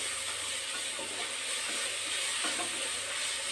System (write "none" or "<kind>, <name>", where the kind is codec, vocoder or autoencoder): none